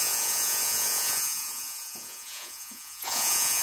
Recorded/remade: remade